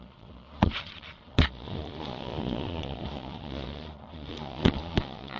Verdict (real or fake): fake